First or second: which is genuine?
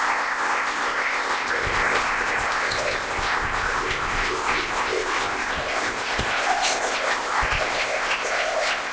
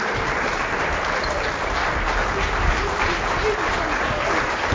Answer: second